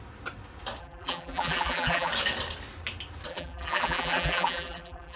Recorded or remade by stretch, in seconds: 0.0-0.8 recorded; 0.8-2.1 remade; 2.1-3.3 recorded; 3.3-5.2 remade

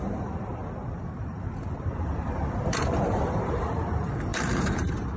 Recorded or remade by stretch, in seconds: 0.0-0.6 remade; 0.6-1.1 recorded; 1.1-5.2 remade

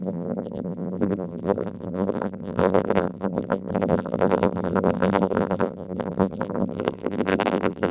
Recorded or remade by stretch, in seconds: 0.0-7.9 remade